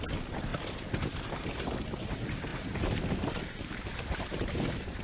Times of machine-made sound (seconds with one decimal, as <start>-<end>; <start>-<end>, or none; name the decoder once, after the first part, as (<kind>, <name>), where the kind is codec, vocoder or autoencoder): 2.5-3.0 (vocoder, BigVGAN v2); 3.9-4.5